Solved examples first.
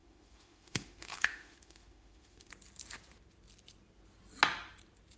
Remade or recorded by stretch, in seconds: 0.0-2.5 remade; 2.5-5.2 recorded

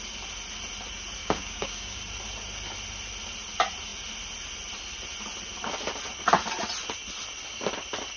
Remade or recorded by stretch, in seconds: 0.0-1.2 recorded; 1.2-2.0 remade; 2.0-8.2 recorded

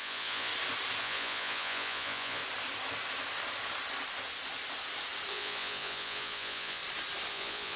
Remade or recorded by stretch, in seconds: 0.0-0.5 remade; 0.5-1.0 recorded; 1.0-2.4 remade; 2.4-5.3 recorded; 5.3-6.8 remade; 6.8-7.3 recorded; 7.3-7.8 remade

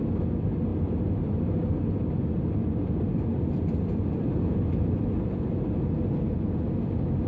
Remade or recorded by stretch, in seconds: 0.0-7.3 recorded

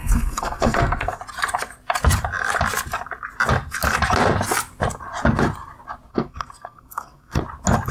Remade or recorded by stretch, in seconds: 0.0-1.2 remade; 1.2-6.1 recorded; 6.1-7.4 remade; 7.4-7.9 recorded

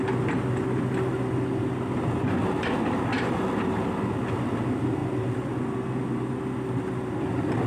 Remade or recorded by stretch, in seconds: 0.0-7.7 recorded